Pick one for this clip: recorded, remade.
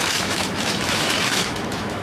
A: remade